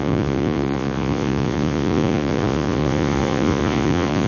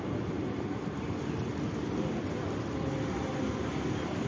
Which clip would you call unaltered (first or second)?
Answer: second